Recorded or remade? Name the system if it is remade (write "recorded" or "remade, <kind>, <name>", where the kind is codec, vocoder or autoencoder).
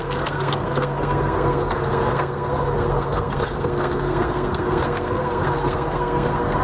remade, codec, SNAC